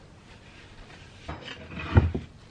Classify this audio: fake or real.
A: real